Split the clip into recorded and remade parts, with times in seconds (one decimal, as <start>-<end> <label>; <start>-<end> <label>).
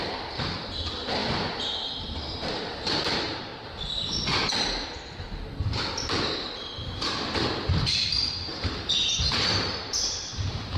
0.0-3.5 remade; 3.5-8.6 recorded; 8.6-10.8 remade